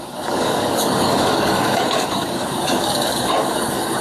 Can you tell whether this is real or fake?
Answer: fake